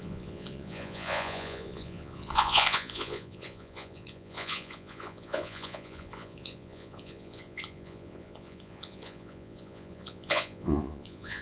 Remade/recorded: remade